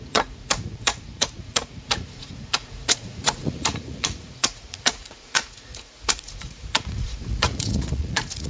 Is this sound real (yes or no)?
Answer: no